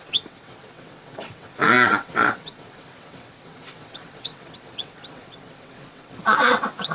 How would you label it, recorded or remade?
remade